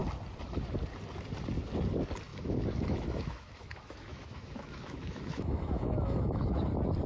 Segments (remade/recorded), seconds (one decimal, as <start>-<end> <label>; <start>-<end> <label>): 0.0-2.3 recorded; 2.3-6.6 remade; 6.6-7.1 recorded